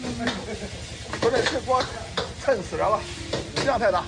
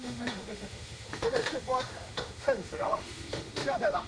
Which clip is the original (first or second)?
first